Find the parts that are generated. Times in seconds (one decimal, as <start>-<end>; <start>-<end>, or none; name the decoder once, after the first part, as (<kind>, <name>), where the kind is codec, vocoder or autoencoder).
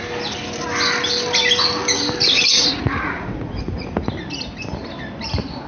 2.5-4.1 (vocoder, Vocos)